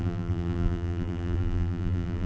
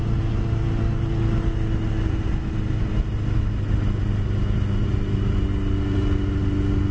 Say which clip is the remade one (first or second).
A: first